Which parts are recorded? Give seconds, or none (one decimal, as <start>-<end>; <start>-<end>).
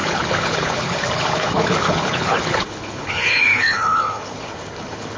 none